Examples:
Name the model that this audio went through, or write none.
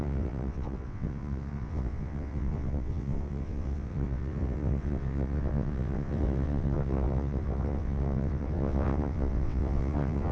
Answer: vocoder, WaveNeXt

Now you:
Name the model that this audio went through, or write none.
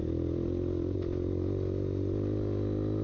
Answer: none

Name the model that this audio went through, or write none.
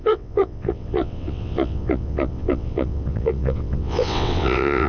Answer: vocoder, WaveNeXt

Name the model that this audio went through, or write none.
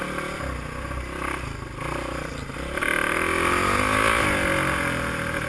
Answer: none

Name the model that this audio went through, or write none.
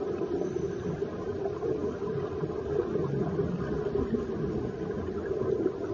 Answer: none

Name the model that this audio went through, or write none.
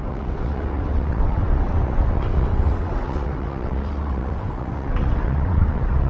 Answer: vocoder, WaveNeXt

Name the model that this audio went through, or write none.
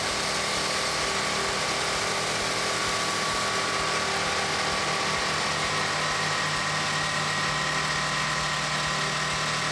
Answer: none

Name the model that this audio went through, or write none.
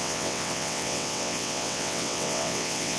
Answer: vocoder, WaveNeXt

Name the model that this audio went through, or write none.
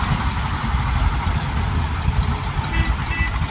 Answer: none